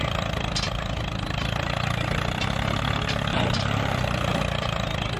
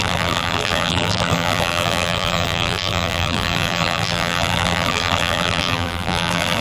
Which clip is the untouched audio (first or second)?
first